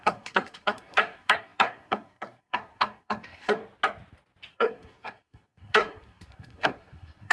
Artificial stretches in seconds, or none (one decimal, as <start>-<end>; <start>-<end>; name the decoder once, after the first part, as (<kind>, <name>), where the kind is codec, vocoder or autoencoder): 0.0-3.6 (codec, SNAC); 4.5-7.3